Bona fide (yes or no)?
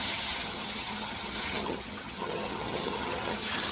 no